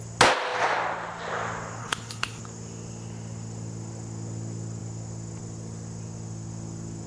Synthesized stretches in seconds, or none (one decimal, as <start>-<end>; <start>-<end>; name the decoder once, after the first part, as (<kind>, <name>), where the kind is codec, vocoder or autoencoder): 1.8-2.4 (codec, HILCodec)